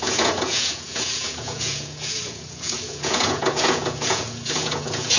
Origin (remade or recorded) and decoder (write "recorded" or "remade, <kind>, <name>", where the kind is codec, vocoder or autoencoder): remade, vocoder, Vocos